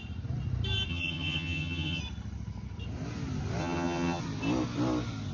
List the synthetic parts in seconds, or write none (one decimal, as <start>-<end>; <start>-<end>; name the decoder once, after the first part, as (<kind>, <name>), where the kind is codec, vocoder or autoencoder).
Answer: 0.9-2.0 (vocoder, HiFi-GAN); 3.6-4.2